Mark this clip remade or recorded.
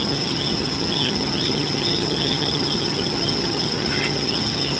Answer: remade